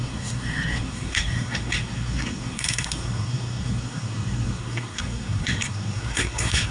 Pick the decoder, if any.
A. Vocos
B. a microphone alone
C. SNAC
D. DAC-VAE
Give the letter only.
C